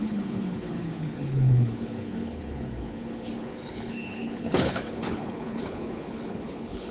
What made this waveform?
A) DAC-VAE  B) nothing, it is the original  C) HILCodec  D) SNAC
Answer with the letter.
C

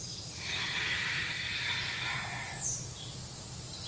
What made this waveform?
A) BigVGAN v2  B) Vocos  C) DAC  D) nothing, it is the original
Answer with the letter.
D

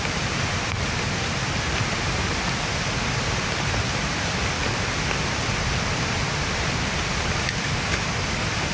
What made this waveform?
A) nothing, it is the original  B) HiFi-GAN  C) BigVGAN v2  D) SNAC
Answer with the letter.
C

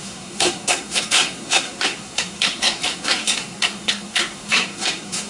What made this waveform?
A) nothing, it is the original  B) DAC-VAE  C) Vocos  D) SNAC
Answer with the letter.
D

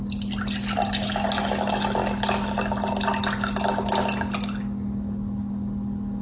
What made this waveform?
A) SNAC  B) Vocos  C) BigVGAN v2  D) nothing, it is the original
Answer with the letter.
D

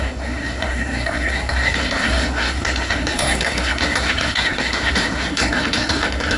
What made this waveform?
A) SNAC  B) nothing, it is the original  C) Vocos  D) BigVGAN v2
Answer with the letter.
A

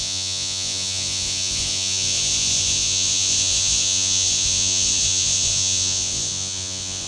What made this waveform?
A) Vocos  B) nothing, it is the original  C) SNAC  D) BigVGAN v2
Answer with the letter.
A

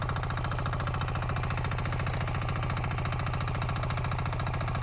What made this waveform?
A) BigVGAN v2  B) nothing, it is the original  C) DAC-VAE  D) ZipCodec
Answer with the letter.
B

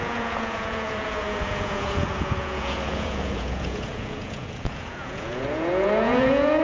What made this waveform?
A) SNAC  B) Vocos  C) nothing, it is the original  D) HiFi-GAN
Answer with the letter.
B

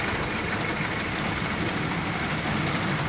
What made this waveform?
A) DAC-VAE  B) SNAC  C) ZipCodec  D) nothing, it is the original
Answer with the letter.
D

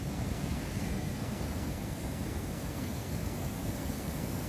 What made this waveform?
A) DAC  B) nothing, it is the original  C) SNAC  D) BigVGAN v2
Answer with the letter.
C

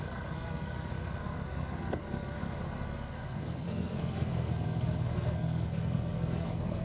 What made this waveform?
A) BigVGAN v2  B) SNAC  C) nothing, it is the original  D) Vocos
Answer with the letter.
B